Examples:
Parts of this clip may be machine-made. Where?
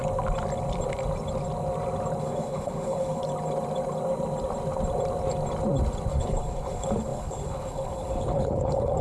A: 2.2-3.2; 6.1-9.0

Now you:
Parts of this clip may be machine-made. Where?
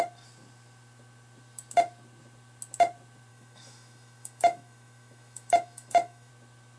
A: 3.3-6.3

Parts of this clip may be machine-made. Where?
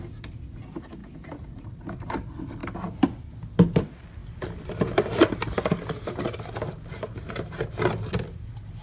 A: 2.6-3.2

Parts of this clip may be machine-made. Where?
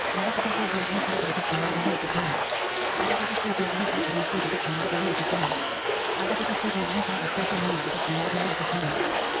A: 0.0-6.1; 6.7-9.4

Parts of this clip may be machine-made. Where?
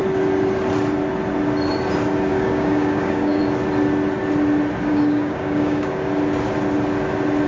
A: 2.3-3.4; 4.9-6.1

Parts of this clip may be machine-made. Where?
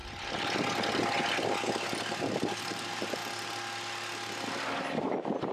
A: 2.6-3.2; 4.8-5.5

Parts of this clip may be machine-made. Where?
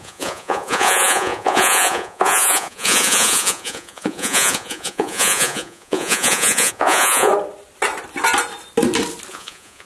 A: 0.0-7.3; 9.3-9.9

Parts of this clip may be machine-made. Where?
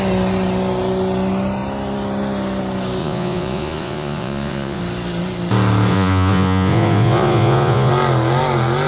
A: 3.0-4.8; 5.9-7.9